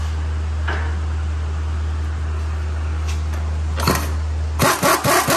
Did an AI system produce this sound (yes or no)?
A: no